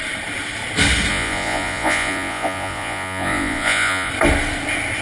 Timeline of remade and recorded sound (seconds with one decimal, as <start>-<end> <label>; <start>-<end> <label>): 0.0-1.1 recorded; 1.1-4.1 remade; 4.1-5.0 recorded